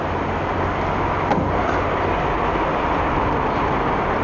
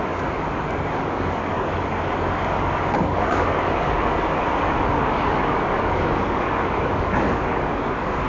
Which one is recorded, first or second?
first